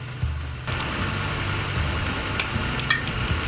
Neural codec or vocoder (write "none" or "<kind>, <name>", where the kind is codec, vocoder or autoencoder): none